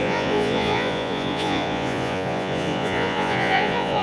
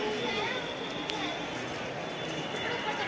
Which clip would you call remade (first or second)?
first